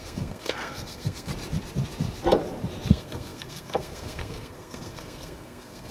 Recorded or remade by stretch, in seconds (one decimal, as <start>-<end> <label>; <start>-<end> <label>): 0.0-1.3 remade; 1.3-2.9 recorded; 2.9-5.9 remade